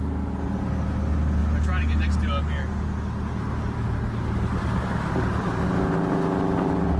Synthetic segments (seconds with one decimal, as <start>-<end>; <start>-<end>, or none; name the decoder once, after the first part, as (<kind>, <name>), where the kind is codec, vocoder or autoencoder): none